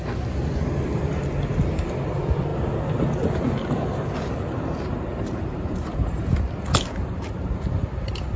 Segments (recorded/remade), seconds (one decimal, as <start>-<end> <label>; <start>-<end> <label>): 0.0-5.1 recorded; 5.1-6.3 remade; 6.3-8.4 recorded